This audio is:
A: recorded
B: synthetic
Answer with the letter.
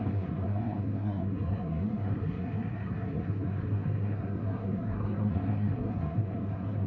B